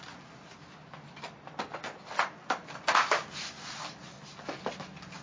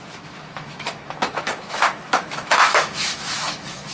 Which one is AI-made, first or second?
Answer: second